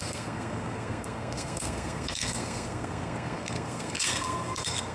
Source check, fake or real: fake